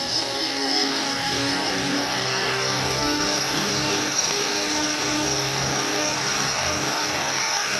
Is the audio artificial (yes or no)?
yes